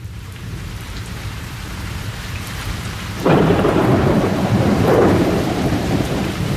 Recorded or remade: remade